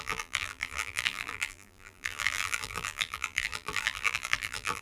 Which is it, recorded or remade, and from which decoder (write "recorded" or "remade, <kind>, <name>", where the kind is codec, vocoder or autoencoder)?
remade, vocoder, BigVGAN v2